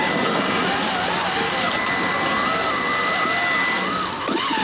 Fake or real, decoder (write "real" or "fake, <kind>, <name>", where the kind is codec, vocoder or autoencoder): real